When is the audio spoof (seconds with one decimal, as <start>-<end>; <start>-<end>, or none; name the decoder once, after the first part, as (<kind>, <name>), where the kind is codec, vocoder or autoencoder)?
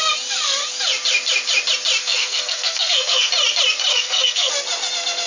2.0-3.3 (codec, SNAC); 3.9-4.5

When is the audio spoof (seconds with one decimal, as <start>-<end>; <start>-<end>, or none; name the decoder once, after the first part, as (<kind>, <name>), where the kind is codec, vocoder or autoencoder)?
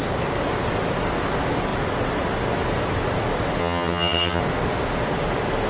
3.6-4.4 (vocoder, HiFi-GAN)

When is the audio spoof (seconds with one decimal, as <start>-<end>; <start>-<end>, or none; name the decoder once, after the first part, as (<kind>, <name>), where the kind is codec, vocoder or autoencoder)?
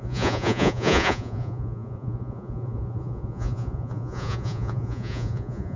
0.0-5.8 (vocoder, Vocos)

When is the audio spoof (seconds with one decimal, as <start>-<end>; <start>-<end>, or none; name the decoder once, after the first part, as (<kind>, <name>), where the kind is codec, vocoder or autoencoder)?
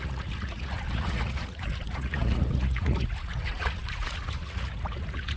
0.0-5.4 (vocoder, Vocos)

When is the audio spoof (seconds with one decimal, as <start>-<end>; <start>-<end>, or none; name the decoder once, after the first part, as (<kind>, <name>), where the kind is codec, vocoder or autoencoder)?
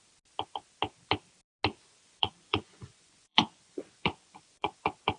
1.7-4.8 (vocoder, Vocos)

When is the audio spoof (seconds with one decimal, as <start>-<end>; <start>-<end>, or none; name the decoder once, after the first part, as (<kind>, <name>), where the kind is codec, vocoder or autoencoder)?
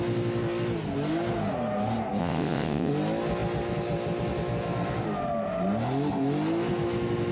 2.2-2.9 (vocoder, WaveNeXt)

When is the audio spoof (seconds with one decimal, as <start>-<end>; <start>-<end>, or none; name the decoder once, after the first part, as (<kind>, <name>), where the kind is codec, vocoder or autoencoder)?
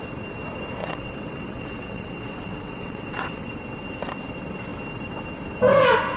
0.8-3.4 (vocoder, WaveNeXt)